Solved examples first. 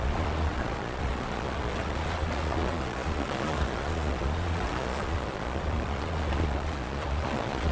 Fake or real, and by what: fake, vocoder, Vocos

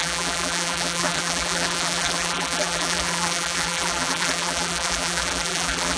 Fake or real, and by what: fake, vocoder, BigVGAN v2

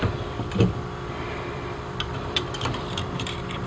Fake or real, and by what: fake, vocoder, BigVGAN v2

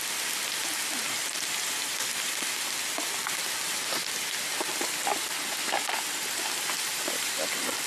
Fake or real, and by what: real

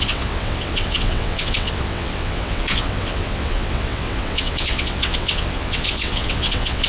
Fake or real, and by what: fake, vocoder, WaveNeXt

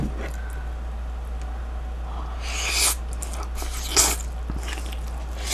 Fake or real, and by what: real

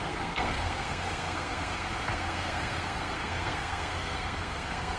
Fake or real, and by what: fake, codec, SNAC